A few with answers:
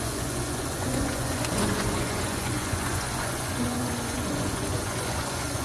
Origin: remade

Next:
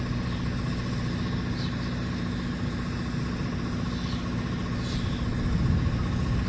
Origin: recorded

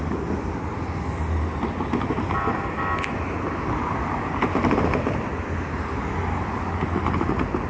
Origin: recorded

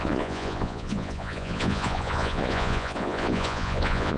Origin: remade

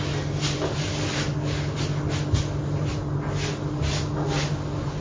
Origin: recorded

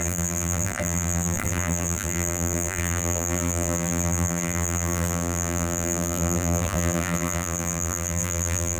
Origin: remade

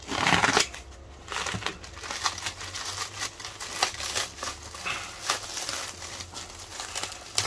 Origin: recorded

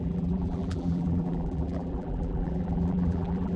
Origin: remade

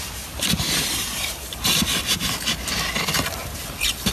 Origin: recorded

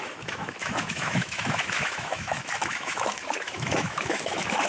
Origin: remade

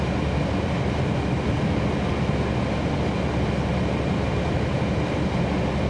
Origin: recorded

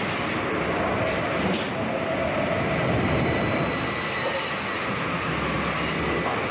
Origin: recorded